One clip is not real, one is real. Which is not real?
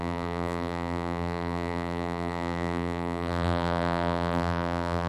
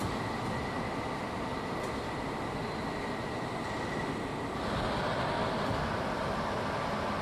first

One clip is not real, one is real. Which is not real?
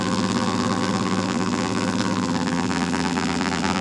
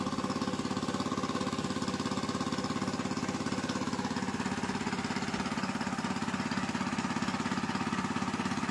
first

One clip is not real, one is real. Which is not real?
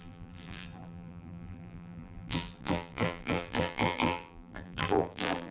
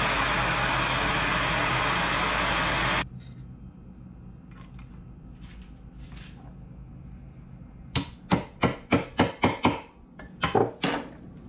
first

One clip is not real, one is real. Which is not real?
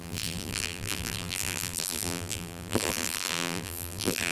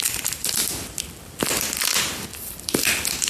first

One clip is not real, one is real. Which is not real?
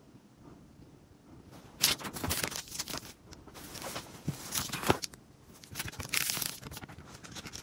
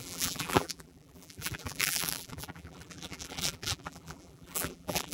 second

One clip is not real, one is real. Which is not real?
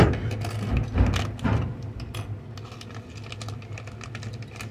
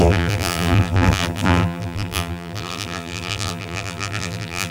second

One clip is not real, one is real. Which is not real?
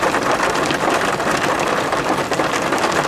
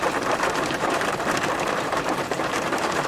second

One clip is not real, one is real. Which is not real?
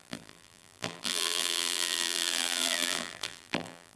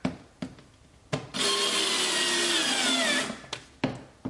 first